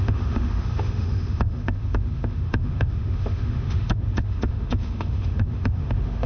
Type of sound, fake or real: fake